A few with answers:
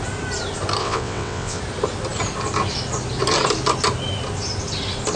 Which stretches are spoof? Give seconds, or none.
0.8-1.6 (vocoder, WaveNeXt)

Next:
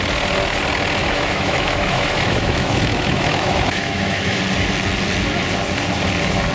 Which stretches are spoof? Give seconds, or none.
1.0-4.4 (autoencoder, DAC-VAE)

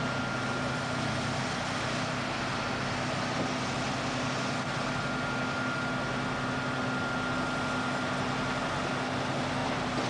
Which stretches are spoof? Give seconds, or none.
none